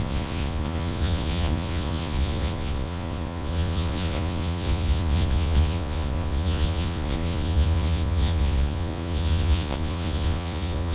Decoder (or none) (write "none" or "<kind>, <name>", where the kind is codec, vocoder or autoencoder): vocoder, Vocos